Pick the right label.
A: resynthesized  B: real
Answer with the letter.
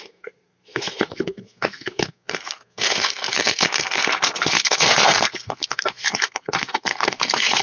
A